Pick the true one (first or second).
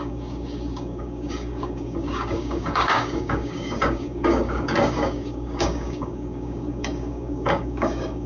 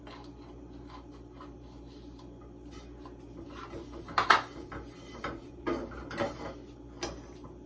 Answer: second